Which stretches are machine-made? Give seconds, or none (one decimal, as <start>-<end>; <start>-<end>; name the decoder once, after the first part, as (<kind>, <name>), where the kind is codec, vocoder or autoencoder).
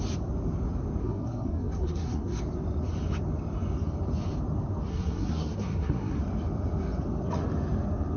1.0-2.4 (codec, SNAC); 4.9-6.2